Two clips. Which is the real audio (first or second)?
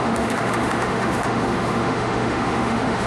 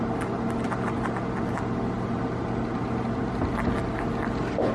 second